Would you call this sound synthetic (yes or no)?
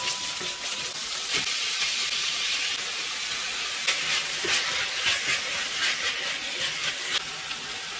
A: no